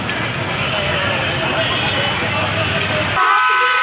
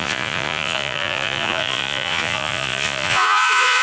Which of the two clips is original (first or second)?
first